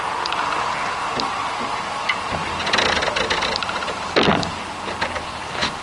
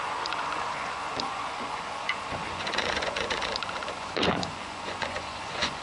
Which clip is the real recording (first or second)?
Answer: first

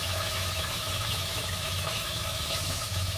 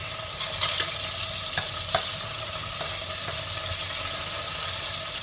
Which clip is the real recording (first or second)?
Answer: second